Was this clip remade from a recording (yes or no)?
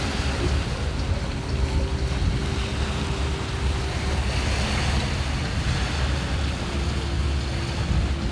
no